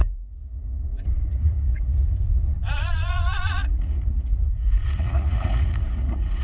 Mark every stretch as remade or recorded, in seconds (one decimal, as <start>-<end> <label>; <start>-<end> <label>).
0.0-6.4 remade